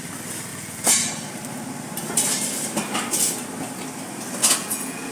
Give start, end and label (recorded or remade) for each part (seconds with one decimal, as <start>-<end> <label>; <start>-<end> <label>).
0.0-0.5 recorded; 0.5-1.1 remade; 1.1-4.4 recorded; 4.4-5.1 remade